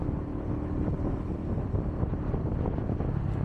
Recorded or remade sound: recorded